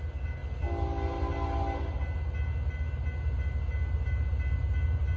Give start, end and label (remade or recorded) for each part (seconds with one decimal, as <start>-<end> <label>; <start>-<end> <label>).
0.0-5.2 recorded